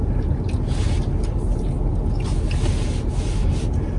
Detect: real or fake real